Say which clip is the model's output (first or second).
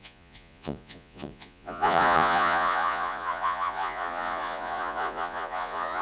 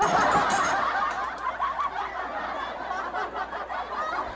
first